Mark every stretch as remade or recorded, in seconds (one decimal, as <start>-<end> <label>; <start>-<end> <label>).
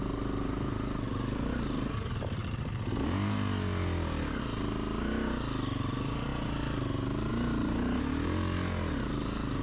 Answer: 0.0-9.6 recorded